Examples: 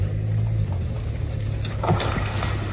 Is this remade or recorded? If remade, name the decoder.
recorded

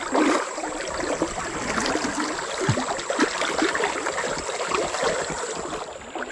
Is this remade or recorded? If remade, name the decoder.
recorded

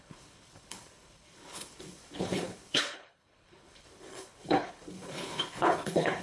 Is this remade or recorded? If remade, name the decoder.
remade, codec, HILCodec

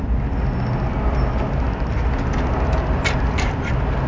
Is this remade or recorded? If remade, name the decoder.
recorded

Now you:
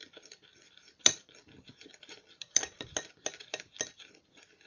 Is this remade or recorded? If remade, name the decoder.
remade, vocoder, BigVGAN v2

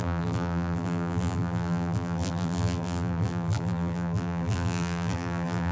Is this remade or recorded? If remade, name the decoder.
remade, vocoder, BigVGAN v2